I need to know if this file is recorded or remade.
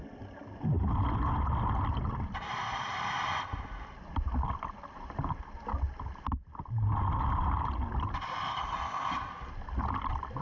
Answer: recorded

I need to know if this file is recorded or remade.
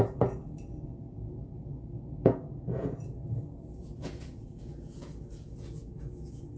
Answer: remade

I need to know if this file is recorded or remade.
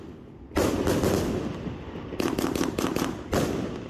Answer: recorded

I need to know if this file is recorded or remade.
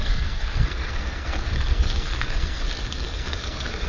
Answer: remade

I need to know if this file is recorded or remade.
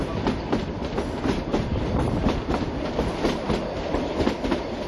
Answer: recorded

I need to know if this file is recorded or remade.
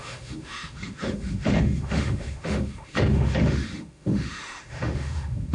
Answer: remade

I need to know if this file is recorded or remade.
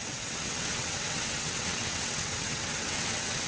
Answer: remade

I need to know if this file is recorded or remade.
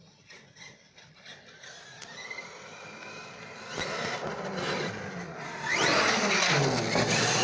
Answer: recorded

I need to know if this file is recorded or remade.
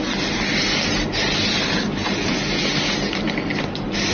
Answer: recorded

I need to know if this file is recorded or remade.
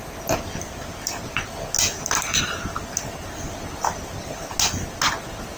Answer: recorded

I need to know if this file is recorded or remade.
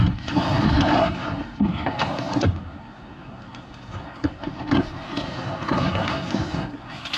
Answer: remade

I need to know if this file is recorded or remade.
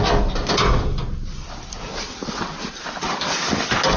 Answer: recorded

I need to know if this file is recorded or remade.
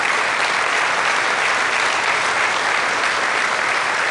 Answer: recorded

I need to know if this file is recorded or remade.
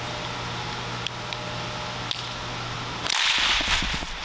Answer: recorded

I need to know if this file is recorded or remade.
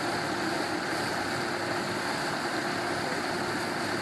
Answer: recorded